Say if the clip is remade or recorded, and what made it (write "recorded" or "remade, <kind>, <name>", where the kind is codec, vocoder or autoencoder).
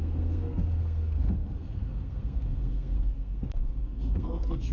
remade, codec, SNAC